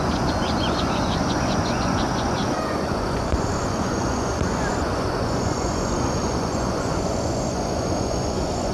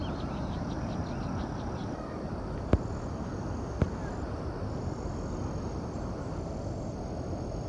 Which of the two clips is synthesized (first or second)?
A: first